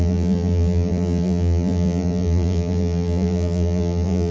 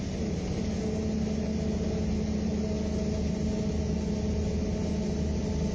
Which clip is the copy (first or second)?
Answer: first